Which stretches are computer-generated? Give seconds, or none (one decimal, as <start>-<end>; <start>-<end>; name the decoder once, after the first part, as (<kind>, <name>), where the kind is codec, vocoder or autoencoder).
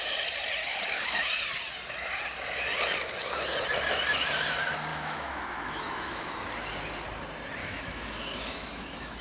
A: 4.9-6.5 (autoencoder, DAC-VAE); 7.6-9.2